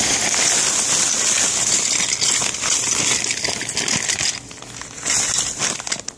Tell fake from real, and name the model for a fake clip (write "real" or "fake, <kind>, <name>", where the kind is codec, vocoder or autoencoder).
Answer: real